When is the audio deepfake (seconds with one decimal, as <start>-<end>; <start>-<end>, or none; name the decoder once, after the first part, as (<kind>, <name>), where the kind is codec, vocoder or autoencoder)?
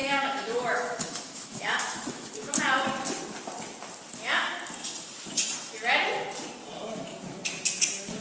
0.0-2.6 (autoencoder, DAC-VAE)